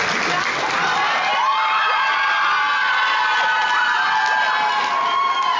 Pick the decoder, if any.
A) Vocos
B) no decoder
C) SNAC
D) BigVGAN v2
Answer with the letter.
B